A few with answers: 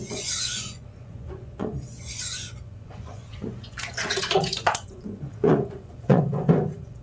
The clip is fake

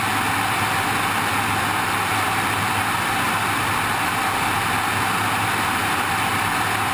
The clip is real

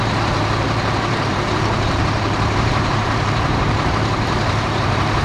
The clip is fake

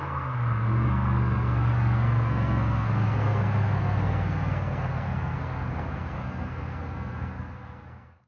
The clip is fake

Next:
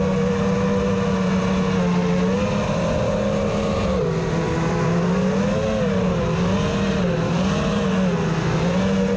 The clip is real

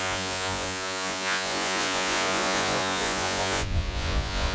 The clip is fake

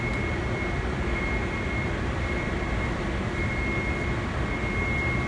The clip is real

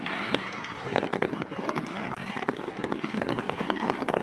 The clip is fake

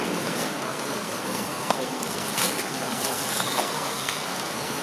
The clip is fake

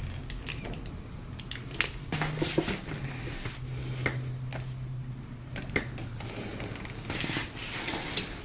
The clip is real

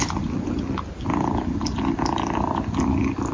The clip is real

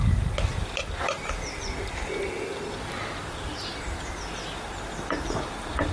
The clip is real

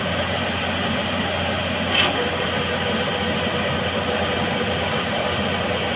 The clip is real